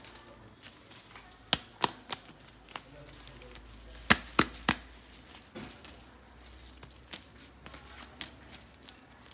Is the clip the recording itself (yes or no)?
yes